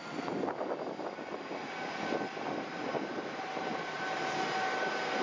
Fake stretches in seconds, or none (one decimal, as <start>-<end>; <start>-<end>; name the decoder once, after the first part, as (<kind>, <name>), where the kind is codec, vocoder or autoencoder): 2.8-4.0 (vocoder, BigVGAN v2)